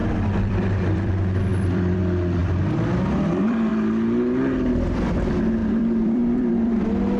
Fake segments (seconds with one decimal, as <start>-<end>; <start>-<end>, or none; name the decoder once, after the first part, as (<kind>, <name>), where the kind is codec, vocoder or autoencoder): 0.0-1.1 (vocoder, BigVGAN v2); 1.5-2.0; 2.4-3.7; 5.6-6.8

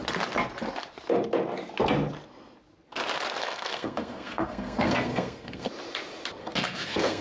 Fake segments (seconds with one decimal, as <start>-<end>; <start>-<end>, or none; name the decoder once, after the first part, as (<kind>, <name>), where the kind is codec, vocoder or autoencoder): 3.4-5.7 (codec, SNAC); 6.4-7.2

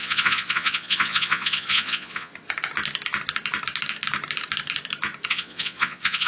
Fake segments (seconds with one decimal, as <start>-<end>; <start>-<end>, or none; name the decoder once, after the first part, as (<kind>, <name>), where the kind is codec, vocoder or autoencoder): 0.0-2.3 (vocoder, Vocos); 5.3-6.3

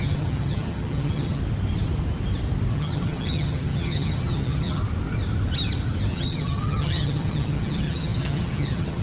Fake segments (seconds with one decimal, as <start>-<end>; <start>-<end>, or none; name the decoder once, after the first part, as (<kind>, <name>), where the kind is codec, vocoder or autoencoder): 0.0-1.4 (vocoder, HiFi-GAN); 2.7-4.8; 6.1-9.0

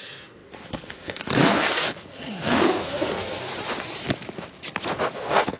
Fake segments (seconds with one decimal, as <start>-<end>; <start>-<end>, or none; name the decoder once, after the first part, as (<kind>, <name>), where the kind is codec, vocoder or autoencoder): 0.0-3.5 (codec, SNAC); 5.1-5.6

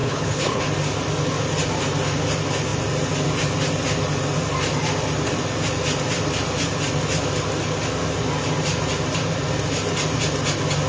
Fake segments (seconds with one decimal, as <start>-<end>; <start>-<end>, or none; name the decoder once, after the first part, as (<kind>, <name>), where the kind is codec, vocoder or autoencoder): 0.0-0.6 (codec, HILCodec)

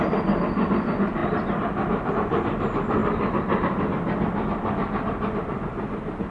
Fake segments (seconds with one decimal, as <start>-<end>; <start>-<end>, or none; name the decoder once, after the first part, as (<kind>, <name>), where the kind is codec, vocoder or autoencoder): none

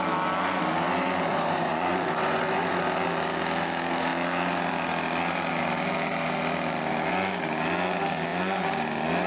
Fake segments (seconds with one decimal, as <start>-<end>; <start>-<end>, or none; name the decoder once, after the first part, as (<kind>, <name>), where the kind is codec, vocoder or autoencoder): 1.3-2.8 (vocoder, Vocos)